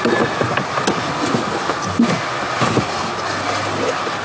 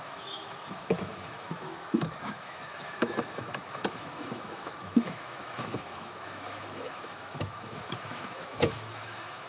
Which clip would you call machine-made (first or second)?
second